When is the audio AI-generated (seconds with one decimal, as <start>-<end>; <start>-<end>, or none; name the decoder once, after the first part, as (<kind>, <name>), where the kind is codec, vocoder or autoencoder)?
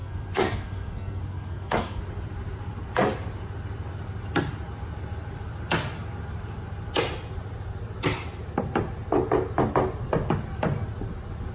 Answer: 0.0-2.0 (codec, SNAC)